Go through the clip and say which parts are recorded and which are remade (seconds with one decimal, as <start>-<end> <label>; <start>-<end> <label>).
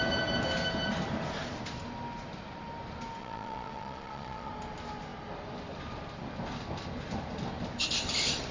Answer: 0.0-3.2 recorded; 3.2-4.5 remade; 4.5-8.5 recorded